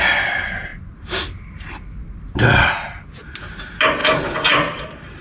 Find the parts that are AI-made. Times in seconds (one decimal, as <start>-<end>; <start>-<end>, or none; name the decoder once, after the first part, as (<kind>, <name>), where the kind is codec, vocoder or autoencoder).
none